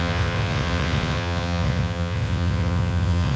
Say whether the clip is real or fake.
fake